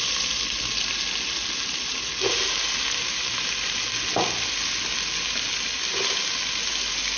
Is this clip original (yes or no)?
yes